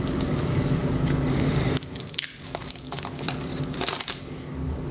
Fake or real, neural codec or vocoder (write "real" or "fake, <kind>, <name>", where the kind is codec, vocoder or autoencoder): fake, codec, DAC